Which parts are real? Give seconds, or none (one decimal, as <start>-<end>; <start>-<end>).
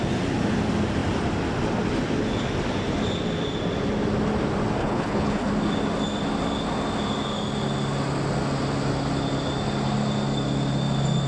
0.0-4.8; 5.5-11.3